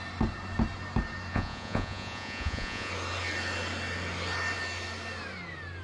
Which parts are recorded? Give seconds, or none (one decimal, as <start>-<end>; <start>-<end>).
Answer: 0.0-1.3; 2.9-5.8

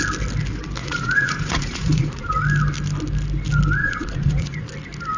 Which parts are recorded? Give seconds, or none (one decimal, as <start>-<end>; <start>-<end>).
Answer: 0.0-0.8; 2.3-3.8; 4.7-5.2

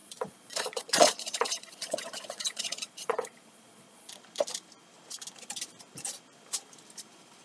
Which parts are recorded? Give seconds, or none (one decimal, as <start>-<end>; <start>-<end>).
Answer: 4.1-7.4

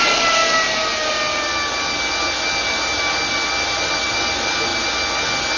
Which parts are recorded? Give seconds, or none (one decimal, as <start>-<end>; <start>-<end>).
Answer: 0.0-5.6

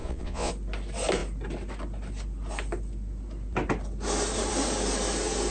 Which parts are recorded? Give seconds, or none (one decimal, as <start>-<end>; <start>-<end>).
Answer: 0.5-5.5

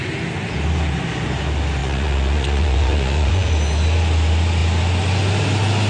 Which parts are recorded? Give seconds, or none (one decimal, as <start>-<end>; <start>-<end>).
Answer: 0.0-1.8; 3.5-5.9